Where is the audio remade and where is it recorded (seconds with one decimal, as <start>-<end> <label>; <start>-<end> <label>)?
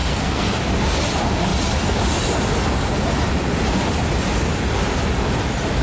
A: 0.0-0.6 remade; 0.6-5.8 recorded